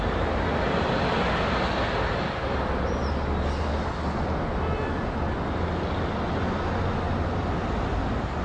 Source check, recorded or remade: recorded